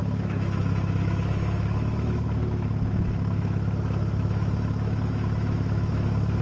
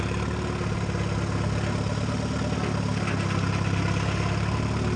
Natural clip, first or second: second